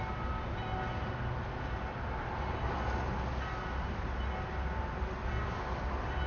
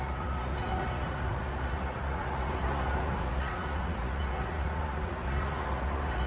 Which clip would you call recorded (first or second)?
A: first